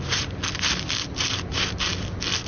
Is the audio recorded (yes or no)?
yes